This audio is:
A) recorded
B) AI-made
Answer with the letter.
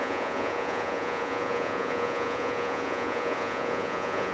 B